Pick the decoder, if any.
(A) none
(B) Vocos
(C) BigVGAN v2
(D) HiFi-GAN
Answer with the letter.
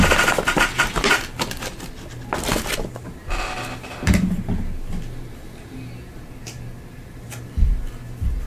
A